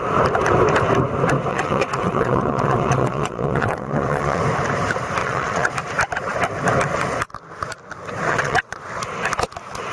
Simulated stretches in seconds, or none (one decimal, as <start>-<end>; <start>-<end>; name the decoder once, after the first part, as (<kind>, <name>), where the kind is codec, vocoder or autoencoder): 1.5-4.4 (vocoder, WaveNeXt); 5.2-5.7; 8.3-8.8